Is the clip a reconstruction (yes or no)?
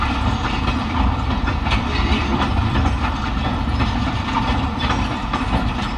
yes